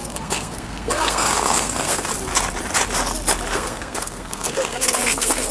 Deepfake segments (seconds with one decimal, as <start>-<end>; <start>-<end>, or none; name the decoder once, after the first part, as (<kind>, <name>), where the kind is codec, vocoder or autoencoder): 0.0-2.1 (codec, SNAC); 3.5-5.5